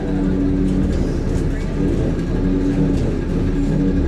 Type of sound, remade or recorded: recorded